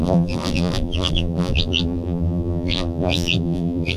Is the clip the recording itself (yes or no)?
no